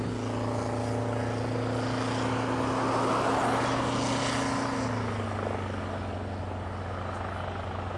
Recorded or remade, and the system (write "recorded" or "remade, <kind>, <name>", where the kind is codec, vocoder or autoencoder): recorded